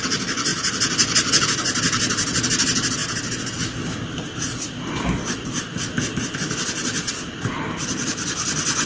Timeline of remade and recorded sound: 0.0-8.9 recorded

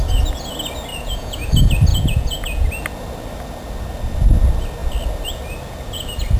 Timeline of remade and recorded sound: 0.0-0.9 recorded; 0.9-1.5 remade; 1.5-1.9 recorded; 1.9-2.7 remade; 2.7-6.4 recorded

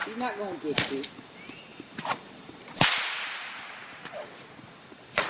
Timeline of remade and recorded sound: 0.0-5.3 recorded

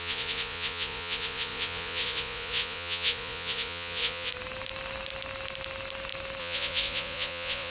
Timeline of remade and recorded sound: 0.0-4.3 remade; 4.3-6.4 recorded; 6.4-7.7 remade

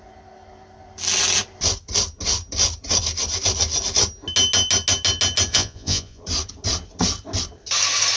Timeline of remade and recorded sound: 0.0-5.5 recorded; 5.5-6.2 remade; 6.2-8.2 recorded

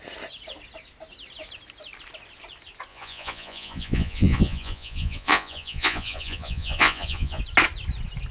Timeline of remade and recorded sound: 0.0-2.9 recorded; 2.9-7.4 remade; 7.4-8.3 recorded

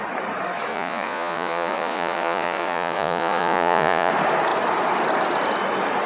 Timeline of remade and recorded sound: 0.0-0.7 recorded; 0.7-4.1 remade; 4.1-6.1 recorded